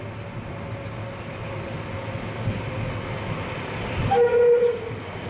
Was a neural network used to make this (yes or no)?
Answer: no